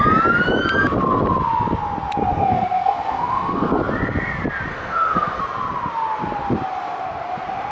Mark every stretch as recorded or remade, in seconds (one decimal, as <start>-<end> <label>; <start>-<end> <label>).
0.0-2.3 recorded; 2.3-3.7 remade; 3.7-4.7 recorded; 4.7-5.4 remade; 5.4-7.7 recorded